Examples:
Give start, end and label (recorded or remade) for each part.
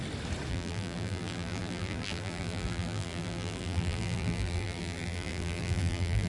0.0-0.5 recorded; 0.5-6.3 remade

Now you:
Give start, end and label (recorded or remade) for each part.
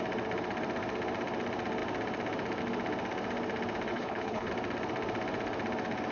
0.0-3.9 recorded; 3.9-4.5 remade; 4.5-6.1 recorded